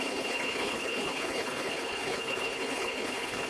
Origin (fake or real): fake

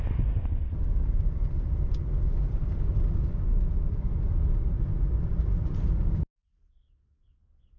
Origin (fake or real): real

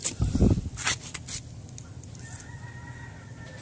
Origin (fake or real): real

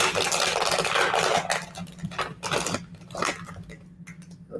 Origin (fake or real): real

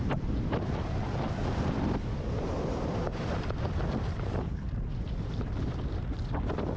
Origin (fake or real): fake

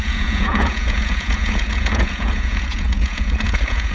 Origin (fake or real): fake